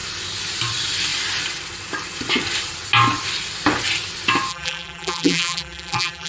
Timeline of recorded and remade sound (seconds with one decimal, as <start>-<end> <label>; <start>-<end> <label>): 0.0-4.5 recorded; 4.5-6.3 remade